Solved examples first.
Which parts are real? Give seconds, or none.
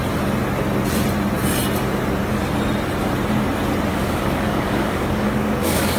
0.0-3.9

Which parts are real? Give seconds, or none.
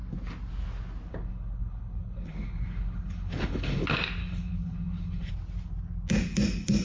0.0-1.1; 3.8-4.2; 5.3-6.8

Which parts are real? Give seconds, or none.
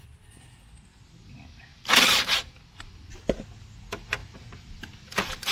0.0-1.7; 2.6-4.2; 4.9-5.5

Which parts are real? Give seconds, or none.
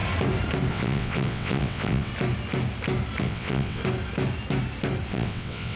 0.0-0.7; 2.1-3.2; 3.8-5.1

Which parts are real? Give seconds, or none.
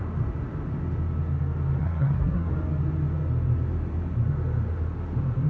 0.0-1.8; 2.5-5.5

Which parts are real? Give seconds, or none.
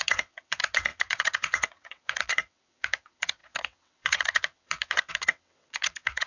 none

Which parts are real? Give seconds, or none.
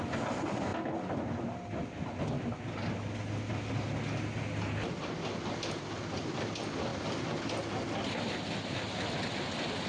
0.0-9.9